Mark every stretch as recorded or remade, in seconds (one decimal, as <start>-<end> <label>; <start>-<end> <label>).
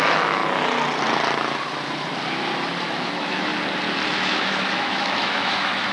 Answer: 0.0-0.4 remade; 0.4-2.8 recorded; 2.8-3.5 remade; 3.5-4.1 recorded; 4.1-5.9 remade